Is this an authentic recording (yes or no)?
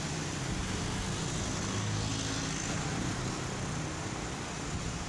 yes